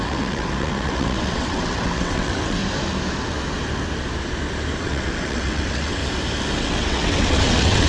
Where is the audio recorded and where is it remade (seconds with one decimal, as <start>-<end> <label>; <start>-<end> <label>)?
0.0-2.6 remade; 2.6-4.8 recorded; 4.8-6.0 remade; 6.0-6.6 recorded; 6.6-7.9 remade